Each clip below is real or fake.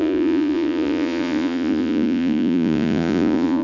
fake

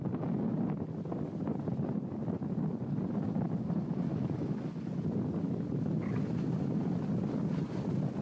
real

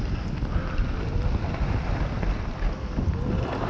real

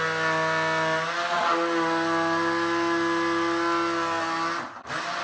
real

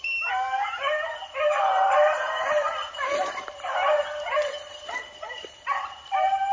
fake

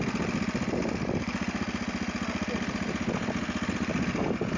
real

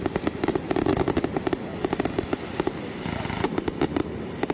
real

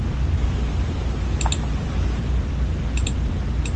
real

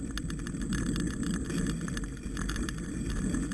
real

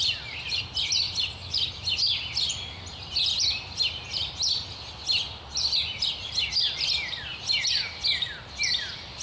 real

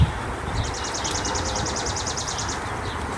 real